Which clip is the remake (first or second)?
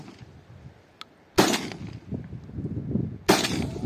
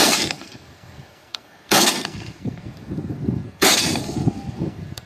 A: second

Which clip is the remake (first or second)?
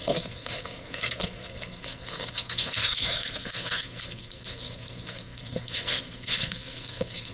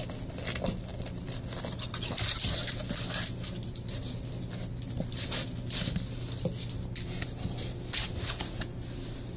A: first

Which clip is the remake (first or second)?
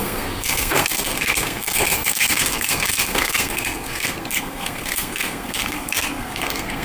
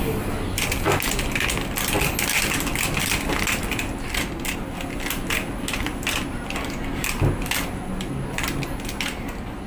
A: first